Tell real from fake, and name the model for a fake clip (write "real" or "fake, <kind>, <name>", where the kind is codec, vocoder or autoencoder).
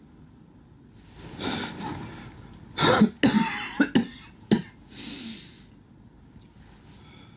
real